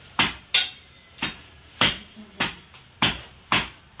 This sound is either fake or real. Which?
real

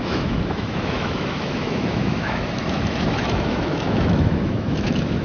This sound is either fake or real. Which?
fake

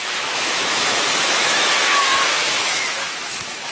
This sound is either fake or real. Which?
fake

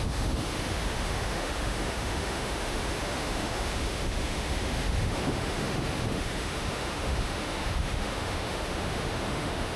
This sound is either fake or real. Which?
fake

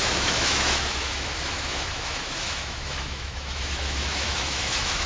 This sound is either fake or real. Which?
fake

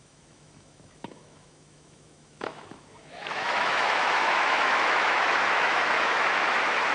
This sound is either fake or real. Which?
fake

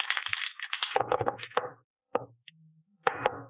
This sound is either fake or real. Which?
fake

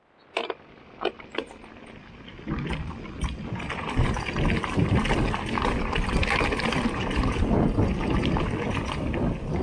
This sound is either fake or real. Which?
real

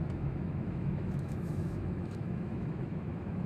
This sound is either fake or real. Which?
fake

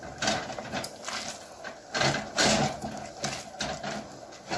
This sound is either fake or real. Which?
real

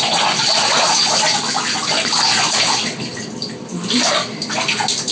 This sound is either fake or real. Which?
real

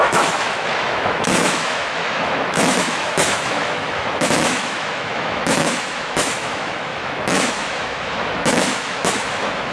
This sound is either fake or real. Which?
fake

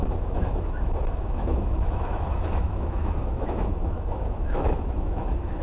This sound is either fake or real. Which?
fake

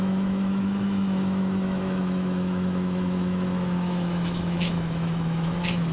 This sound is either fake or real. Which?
fake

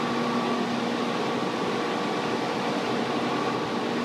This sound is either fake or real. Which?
real